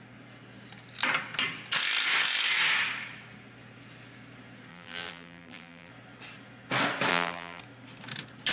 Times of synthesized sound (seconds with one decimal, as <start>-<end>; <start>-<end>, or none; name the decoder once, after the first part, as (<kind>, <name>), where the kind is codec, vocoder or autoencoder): 4.7-5.9 (vocoder, BigVGAN v2); 7.1-7.6